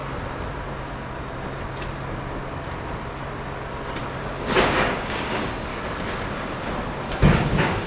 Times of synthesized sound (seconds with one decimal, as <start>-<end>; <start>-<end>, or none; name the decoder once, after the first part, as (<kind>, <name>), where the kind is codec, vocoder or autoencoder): 4.2-5.7 (codec, DAC); 7.1-7.9